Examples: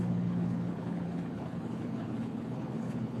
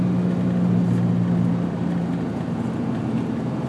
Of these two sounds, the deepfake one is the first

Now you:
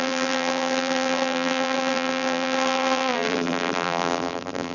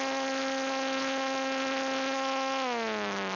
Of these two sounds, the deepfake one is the first